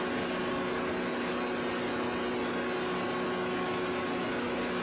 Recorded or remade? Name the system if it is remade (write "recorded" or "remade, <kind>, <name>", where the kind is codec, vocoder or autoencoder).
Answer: recorded